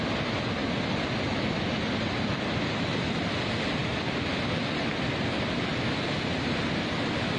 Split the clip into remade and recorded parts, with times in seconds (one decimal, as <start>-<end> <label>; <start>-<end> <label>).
0.0-7.4 recorded